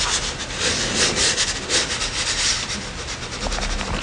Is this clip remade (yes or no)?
no